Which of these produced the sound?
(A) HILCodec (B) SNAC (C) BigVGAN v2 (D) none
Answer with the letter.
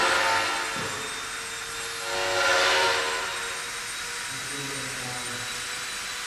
D